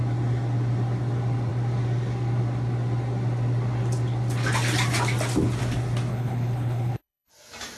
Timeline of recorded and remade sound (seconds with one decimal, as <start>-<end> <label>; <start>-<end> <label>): 0.0-6.1 recorded; 6.1-7.3 remade; 7.3-7.8 recorded